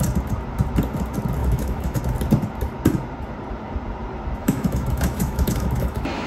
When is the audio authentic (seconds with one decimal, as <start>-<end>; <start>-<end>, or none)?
0.0-1.4; 2.0-4.4